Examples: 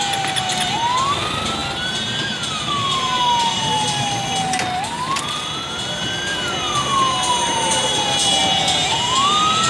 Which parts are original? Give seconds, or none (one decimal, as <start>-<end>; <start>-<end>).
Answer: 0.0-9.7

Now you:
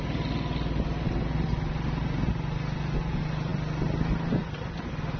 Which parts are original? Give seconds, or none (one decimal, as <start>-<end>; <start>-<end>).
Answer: 0.0-5.2

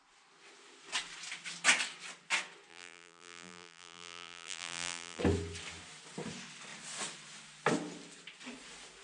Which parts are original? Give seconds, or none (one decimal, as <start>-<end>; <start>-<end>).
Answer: 0.0-2.7; 5.2-9.0

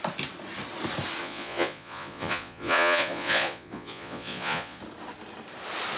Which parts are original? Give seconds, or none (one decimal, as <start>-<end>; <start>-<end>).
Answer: 0.0-1.2; 4.8-6.0